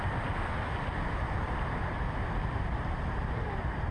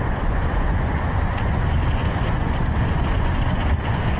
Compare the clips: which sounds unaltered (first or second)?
first